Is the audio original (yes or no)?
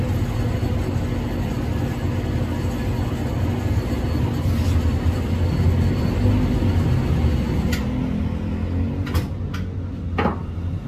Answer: yes